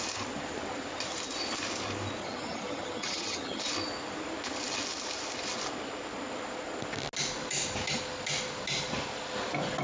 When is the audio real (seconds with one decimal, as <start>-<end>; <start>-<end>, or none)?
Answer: 0.0-2.2; 3.6-9.8